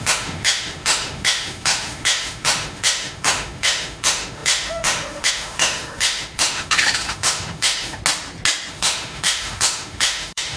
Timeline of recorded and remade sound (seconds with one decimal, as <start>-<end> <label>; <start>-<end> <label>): 0.0-8.0 remade; 8.0-8.7 recorded; 8.7-10.6 remade